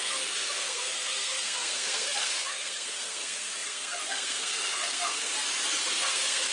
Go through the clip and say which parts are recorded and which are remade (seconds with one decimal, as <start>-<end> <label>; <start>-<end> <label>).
0.0-5.3 remade; 5.3-5.8 recorded; 5.8-6.5 remade